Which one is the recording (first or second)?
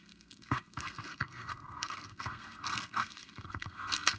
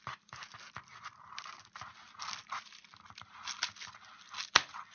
second